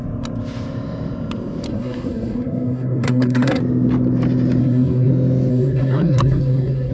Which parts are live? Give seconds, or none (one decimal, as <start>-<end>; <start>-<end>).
0.0-1.7; 3.6-4.6; 5.1-5.5